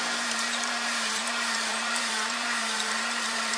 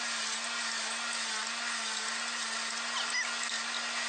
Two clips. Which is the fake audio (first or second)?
first